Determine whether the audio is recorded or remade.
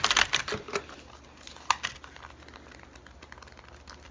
recorded